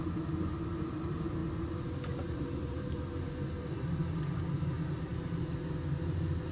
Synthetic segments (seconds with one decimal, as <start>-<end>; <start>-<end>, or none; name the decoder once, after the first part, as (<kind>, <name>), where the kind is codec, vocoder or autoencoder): none